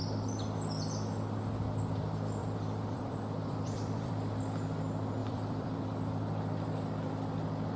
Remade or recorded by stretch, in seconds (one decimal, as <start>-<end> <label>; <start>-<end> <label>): 0.0-2.4 recorded; 2.4-4.1 remade; 4.1-5.2 recorded; 5.2-5.8 remade; 5.8-7.8 recorded